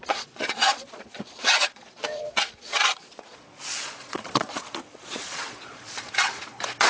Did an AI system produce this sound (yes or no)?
yes